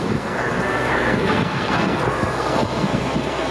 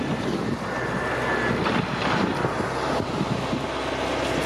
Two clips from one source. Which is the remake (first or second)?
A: first